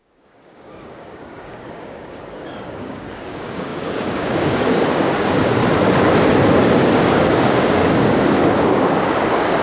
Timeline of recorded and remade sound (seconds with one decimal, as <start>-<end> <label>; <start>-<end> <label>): 0.0-5.6 remade; 5.6-6.9 recorded; 6.9-9.6 remade